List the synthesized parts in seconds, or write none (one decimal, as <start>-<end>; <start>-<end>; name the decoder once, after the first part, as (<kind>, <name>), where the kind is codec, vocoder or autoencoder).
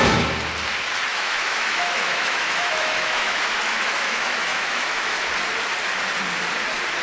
1.1-5.3 (autoencoder, DAC-VAE)